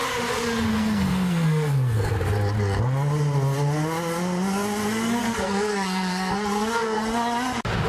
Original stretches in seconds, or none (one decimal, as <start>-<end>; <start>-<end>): 0.0-0.7; 2.1-5.2; 7.0-7.9